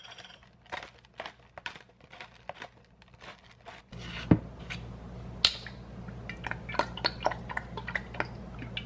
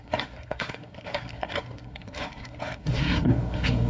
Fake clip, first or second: second